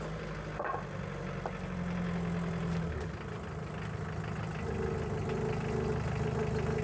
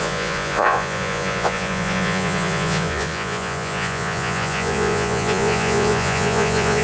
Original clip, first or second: first